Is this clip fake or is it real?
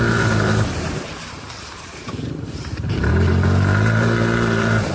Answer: fake